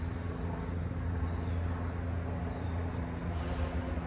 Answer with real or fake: real